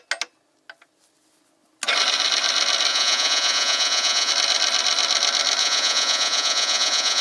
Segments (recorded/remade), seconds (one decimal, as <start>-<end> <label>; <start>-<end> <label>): 0.0-2.9 recorded; 2.9-4.3 remade; 4.3-5.6 recorded; 5.6-7.2 remade